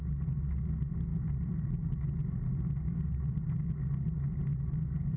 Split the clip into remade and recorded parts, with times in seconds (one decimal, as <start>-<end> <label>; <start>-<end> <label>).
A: 0.0-5.2 recorded